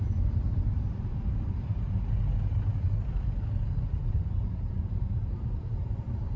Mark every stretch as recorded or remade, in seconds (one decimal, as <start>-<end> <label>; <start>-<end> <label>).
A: 0.0-1.1 remade; 1.1-4.0 recorded; 4.0-6.4 remade